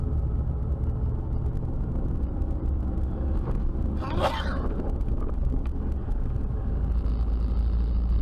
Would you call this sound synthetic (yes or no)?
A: no